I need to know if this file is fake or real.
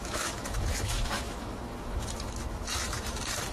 fake